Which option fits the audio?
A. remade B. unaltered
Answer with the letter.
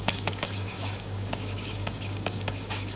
A